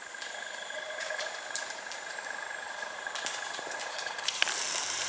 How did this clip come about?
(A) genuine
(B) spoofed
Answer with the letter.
B